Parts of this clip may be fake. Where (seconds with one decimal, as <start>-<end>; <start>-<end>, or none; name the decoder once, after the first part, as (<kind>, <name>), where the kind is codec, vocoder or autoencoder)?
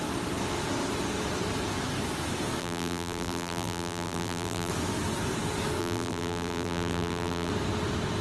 2.6-4.7 (vocoder, BigVGAN v2); 5.8-7.5